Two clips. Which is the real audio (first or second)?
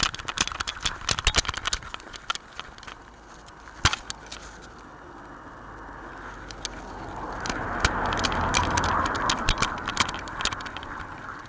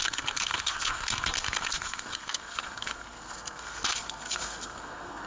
first